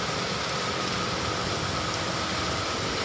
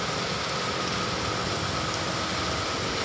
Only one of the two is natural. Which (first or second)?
second